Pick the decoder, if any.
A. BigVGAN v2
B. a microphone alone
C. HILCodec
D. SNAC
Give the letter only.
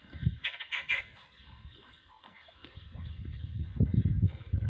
D